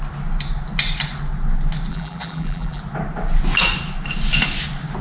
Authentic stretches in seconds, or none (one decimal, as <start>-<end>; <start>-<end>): 0.0-1.9; 2.8-5.0